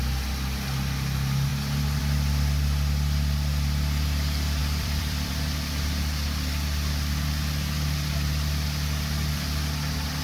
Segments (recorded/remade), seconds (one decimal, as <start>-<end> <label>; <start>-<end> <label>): 0.0-1.5 recorded; 1.5-2.0 remade; 2.0-4.6 recorded; 4.6-5.3 remade; 5.3-10.2 recorded